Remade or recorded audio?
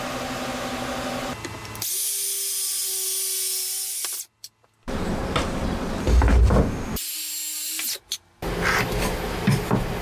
recorded